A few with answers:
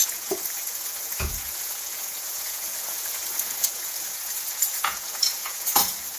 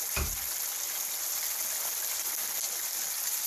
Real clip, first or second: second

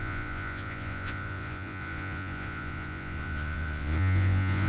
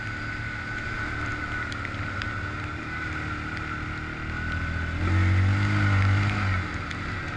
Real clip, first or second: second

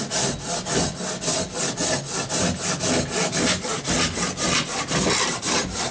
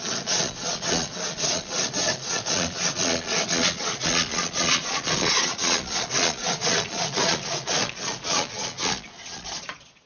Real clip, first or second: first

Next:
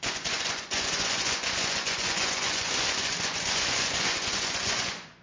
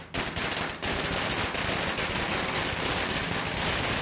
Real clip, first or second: second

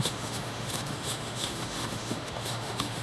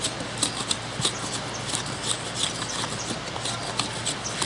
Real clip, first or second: second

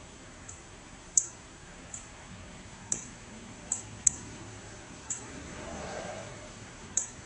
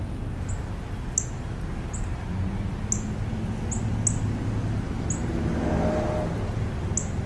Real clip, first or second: second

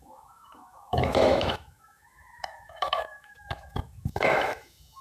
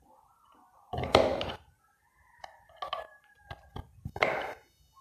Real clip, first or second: second